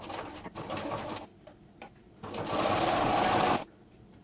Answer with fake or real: real